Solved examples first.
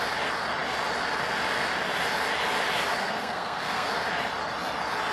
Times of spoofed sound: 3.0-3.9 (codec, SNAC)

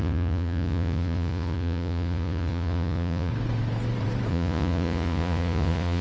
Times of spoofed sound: 0.0-3.3 (vocoder, Vocos); 4.3-6.0

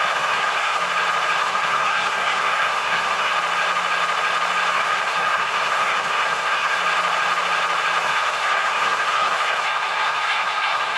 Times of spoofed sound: 0.0-0.8 (codec, SNAC); 1.4-3.3; 4.7-6.8; 8.0-11.0

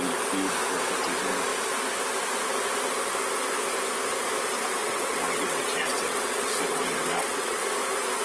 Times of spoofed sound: 4.8-7.6 (vocoder, WaveNeXt)

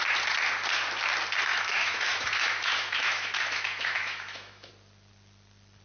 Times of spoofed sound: 1.5-4.7 (autoencoder, DAC-VAE)

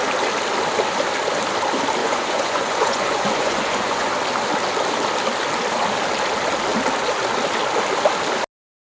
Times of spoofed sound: 2.0-4.1 (vocoder, Vocos)

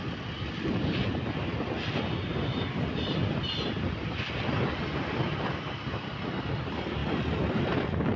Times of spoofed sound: none

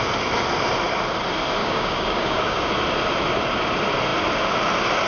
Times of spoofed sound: 1.6-2.7 (codec, DAC)